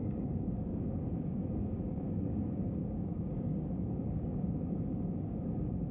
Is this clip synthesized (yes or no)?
yes